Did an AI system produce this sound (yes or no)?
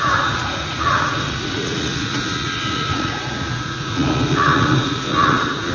yes